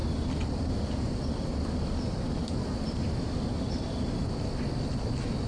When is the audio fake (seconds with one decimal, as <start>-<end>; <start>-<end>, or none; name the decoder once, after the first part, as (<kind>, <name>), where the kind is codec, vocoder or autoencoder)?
none